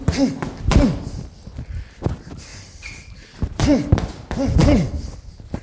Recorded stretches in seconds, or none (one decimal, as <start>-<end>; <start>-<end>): 0.0-2.5; 3.2-5.6